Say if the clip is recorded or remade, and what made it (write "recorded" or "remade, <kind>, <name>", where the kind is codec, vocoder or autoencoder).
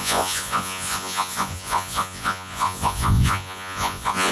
remade, vocoder, Vocos